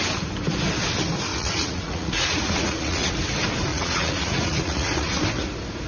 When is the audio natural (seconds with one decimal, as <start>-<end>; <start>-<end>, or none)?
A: 0.0-1.3; 3.1-3.7; 5.2-5.9